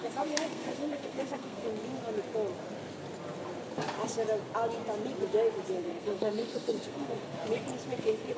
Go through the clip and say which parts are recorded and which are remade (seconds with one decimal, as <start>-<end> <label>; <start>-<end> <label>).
0.0-1.7 remade; 1.7-5.7 recorded; 5.7-7.4 remade; 7.4-8.0 recorded; 8.0-8.4 remade